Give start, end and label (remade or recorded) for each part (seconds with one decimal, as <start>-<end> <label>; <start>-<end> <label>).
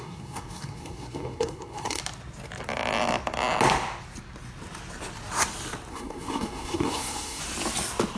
0.0-2.0 remade; 2.0-5.9 recorded; 5.9-7.4 remade; 7.4-8.2 recorded